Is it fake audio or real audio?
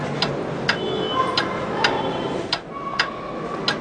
real